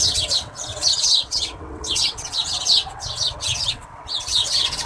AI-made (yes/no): yes